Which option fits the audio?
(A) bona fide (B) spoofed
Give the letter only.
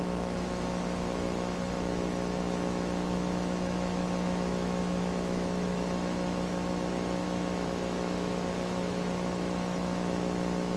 B